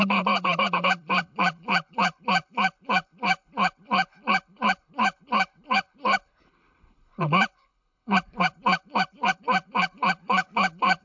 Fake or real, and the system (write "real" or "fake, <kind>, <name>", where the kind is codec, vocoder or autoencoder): fake, codec, HILCodec